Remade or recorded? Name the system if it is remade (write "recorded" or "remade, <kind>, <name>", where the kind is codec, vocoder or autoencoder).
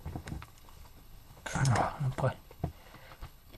remade, codec, HILCodec